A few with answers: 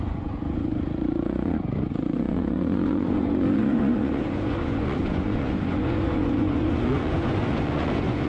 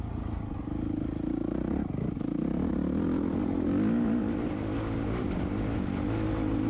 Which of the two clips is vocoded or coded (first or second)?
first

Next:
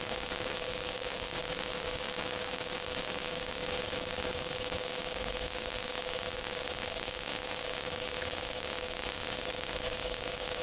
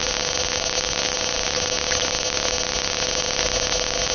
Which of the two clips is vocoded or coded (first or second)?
first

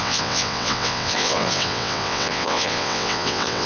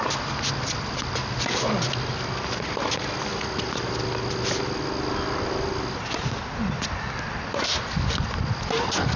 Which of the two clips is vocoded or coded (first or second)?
first